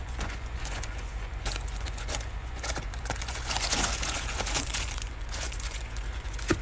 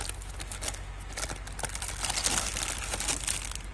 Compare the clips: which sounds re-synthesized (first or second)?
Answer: first